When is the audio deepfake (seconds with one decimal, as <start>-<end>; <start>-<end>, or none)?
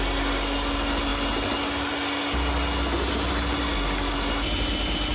none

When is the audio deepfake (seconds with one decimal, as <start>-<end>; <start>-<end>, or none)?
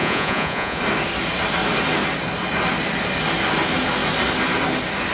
0.0-0.8